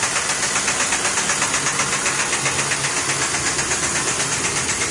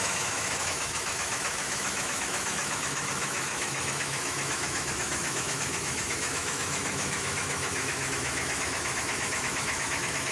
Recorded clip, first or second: first